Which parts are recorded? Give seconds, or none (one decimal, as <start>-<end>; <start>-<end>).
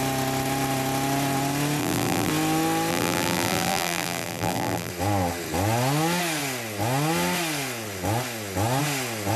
0.0-1.8; 2.3-2.9; 4.9-9.4